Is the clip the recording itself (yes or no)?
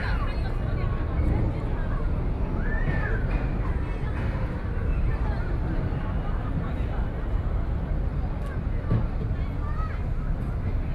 yes